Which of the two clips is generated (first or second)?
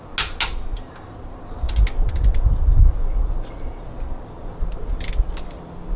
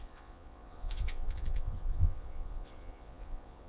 second